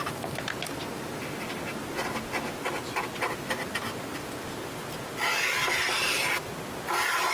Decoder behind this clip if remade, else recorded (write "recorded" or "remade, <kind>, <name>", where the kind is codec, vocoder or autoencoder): recorded